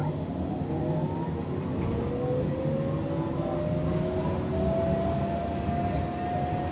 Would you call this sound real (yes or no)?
yes